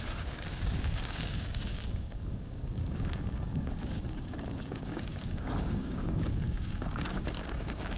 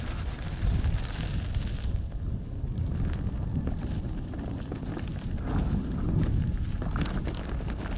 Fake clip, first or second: first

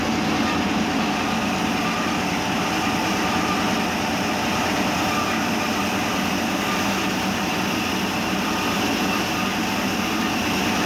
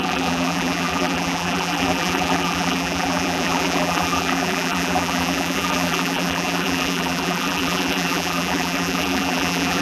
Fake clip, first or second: second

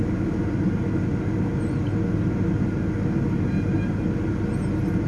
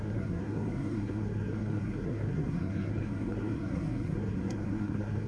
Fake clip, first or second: second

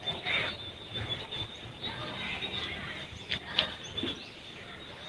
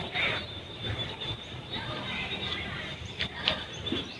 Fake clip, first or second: second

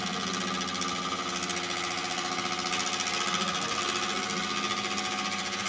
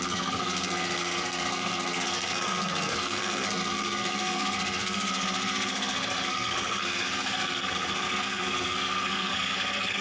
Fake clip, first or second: second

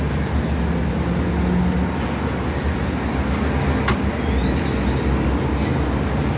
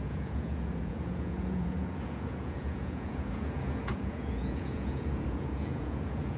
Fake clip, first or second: second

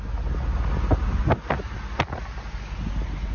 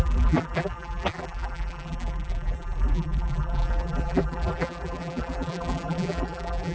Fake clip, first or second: second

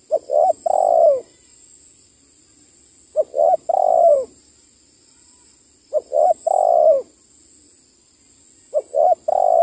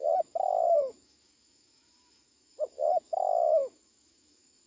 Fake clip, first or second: second